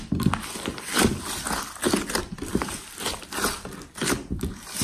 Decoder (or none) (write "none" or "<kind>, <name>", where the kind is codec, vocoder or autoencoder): none